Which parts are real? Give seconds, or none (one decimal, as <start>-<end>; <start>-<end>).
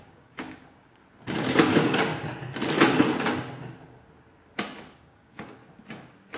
1.0-1.6; 2.1-5.0; 5.6-6.4